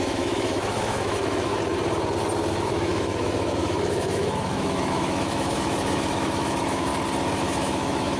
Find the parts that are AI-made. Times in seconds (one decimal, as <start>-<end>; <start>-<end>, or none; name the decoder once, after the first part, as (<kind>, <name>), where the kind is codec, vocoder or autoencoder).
0.0-1.5 (autoencoder, DAC-VAE); 2.5-6.9; 7.4-8.2